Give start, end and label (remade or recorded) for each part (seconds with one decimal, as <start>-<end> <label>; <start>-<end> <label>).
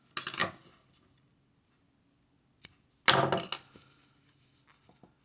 0.0-5.2 recorded